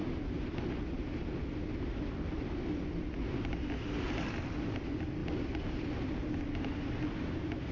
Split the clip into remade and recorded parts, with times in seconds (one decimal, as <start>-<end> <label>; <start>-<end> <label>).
0.0-7.7 recorded